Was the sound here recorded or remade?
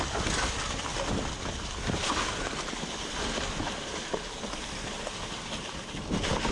recorded